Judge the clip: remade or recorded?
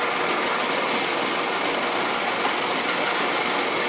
recorded